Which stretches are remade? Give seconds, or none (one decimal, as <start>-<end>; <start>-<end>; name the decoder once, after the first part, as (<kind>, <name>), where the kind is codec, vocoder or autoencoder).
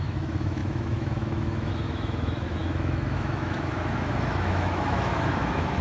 0.0-5.8 (autoencoder, DAC-VAE)